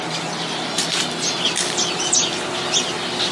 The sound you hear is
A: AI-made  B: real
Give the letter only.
B